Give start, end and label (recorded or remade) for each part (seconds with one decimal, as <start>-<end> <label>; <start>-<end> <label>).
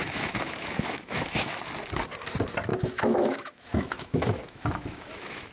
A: 0.0-1.6 remade; 1.6-2.7 recorded; 2.7-5.5 remade